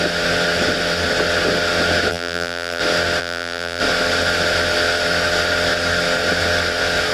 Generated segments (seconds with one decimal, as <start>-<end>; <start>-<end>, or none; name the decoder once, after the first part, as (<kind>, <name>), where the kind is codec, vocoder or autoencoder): 2.1-2.8 (vocoder, BigVGAN v2); 3.2-3.8